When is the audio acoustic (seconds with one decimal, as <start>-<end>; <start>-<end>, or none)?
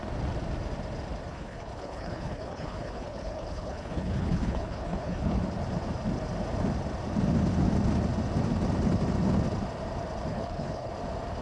0.0-1.3; 5.4-10.3; 10.9-11.4